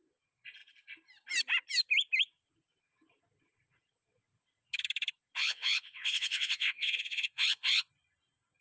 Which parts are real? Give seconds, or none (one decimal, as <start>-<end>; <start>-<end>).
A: 0.0-5.4; 7.9-8.6

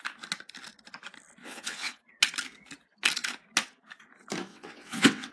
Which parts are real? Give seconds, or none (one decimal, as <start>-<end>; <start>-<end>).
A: 0.0-1.4; 2.0-4.5

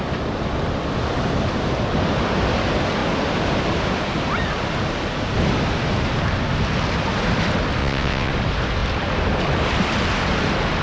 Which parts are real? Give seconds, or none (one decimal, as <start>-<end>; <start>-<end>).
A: 0.0-7.8; 8.3-10.8

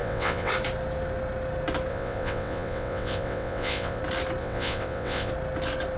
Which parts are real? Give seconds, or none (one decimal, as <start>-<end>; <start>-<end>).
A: 0.5-1.9; 4.0-4.4; 5.3-6.0

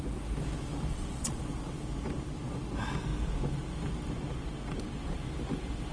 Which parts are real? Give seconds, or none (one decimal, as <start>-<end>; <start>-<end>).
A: 0.0-0.9; 1.4-5.9